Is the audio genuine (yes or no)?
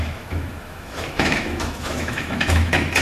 no